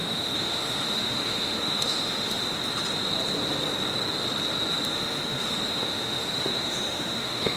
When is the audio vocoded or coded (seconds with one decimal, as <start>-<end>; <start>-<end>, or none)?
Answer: 0.0-2.4; 4.9-7.6